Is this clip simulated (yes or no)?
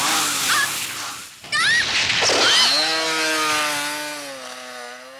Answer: no